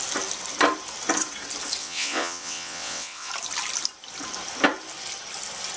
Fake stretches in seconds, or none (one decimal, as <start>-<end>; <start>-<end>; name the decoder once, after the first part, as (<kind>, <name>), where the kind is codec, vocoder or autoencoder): 1.8-3.3 (vocoder, WaveNeXt)